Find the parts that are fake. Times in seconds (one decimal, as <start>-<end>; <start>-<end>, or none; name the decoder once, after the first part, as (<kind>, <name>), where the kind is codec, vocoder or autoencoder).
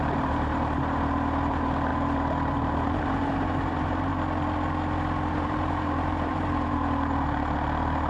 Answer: 0.0-4.1 (vocoder, BigVGAN v2); 5.3-8.1